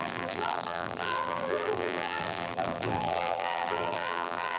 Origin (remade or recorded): remade